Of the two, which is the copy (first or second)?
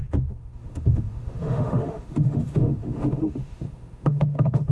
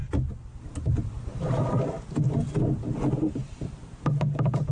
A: first